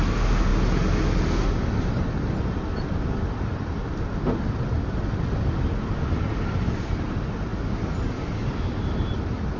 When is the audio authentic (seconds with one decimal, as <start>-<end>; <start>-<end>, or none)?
0.0-9.6